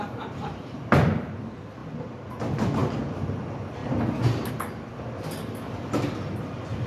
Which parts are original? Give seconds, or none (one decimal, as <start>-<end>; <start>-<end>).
0.0-6.9